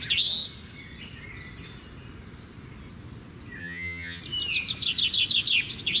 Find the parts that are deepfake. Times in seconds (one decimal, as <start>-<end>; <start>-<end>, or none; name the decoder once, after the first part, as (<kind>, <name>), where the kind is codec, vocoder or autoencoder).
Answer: 3.6-4.2 (vocoder, HiFi-GAN)